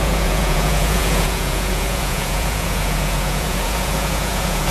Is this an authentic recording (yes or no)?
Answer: no